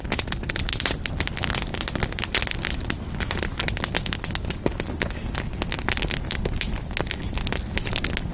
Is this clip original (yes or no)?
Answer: yes